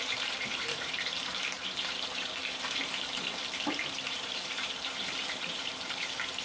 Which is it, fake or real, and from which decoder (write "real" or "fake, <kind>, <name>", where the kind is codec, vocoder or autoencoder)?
fake, vocoder, BigVGAN v2